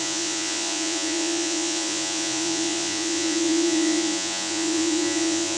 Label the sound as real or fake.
fake